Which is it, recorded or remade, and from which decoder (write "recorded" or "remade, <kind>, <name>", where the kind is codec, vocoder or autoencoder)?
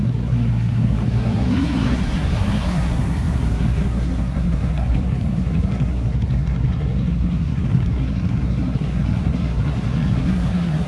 remade, codec, SNAC